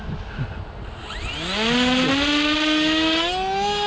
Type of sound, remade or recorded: recorded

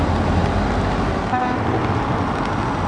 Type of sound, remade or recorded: recorded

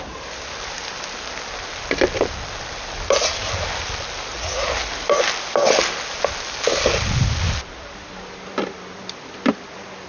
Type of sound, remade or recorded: recorded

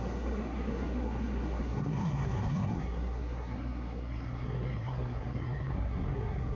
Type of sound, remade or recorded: remade